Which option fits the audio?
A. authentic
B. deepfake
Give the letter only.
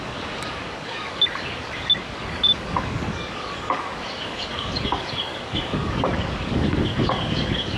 B